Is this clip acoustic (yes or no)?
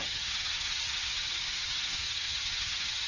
no